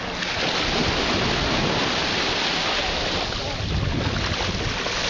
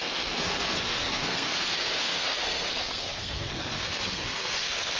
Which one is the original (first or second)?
first